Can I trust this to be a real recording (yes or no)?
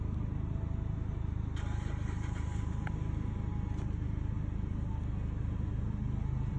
yes